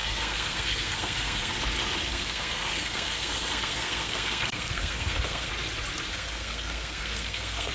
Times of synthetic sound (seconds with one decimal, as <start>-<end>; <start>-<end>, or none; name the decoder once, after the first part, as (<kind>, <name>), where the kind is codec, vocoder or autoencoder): 0.0-1.5 (codec, SNAC); 2.1-5.5; 6.1-7.7